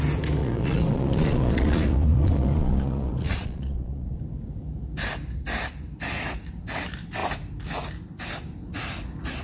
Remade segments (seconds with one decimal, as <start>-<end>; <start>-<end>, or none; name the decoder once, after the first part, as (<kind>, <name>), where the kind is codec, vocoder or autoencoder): 0.4-4.2 (vocoder, Vocos)